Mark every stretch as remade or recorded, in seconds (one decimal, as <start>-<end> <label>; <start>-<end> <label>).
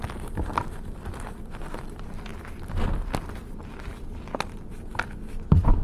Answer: 0.0-2.3 remade; 2.3-4.7 recorded; 4.7-5.8 remade